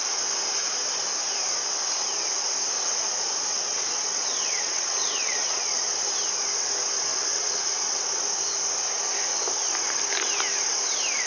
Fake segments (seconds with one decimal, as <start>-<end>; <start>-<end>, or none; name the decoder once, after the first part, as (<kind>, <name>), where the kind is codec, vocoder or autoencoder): 3.5-5.9 (vocoder, WaveNeXt); 7.1-8.3